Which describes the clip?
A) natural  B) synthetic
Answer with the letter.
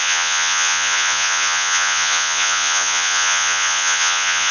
B